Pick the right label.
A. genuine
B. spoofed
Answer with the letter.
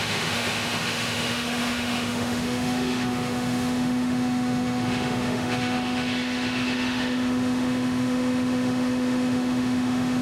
B